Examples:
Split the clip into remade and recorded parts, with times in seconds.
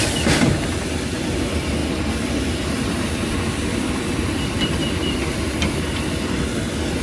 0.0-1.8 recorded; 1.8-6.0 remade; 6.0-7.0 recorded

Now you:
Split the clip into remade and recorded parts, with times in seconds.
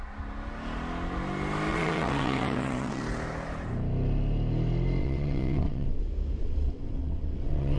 0.0-1.7 recorded; 1.7-3.0 remade; 3.0-5.0 recorded; 5.0-6.0 remade; 6.0-6.4 recorded; 6.4-7.8 remade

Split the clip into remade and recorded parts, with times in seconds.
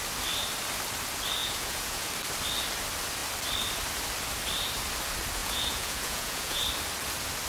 0.0-1.4 recorded; 1.4-2.1 remade; 2.1-5.4 recorded; 5.4-6.6 remade; 6.6-7.5 recorded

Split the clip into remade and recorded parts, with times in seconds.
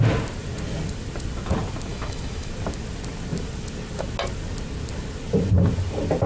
0.0-1.9 recorded; 1.9-2.5 remade; 2.5-6.3 recorded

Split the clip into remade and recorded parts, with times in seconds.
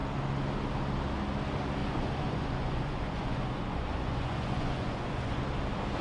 0.0-1.8 recorded; 1.8-5.4 remade; 5.4-6.0 recorded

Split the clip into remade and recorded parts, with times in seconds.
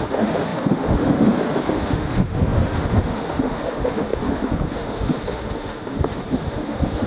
0.0-7.1 remade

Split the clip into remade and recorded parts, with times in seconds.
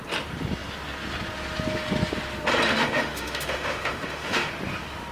0.0-2.7 recorded; 2.7-4.5 remade; 4.5-5.1 recorded